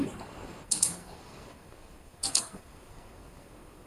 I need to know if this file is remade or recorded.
remade